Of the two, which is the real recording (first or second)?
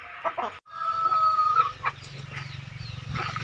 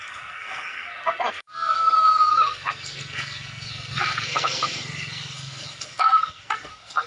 first